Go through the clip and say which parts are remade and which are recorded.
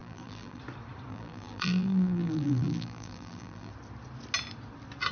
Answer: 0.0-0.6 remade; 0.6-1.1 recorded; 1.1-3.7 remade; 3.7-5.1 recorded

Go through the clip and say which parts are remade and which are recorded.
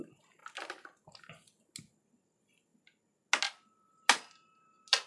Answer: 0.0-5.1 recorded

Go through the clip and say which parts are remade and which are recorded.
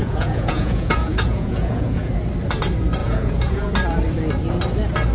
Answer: 0.0-2.1 remade; 2.1-3.0 recorded; 3.0-3.7 remade; 3.7-5.1 recorded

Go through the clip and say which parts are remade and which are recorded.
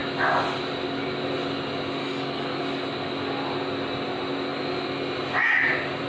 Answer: 0.0-2.0 recorded; 2.0-2.6 remade; 2.6-6.1 recorded